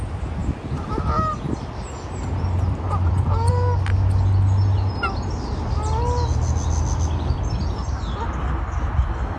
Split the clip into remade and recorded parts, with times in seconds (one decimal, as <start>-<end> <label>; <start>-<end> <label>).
0.0-9.4 recorded